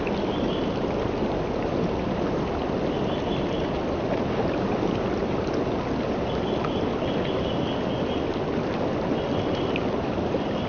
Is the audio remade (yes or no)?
no